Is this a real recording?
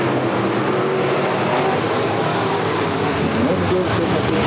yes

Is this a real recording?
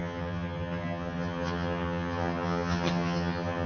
no